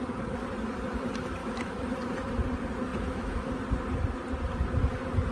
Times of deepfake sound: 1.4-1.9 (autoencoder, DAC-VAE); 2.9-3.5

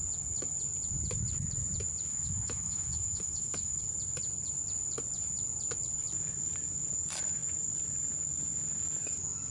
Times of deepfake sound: 2.1-3.8 (autoencoder, DAC-VAE)

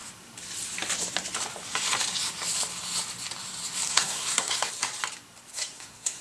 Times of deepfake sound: 3.9-4.7 (codec, SNAC); 5.5-6.2